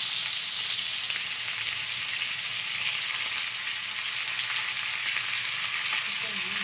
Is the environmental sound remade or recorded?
recorded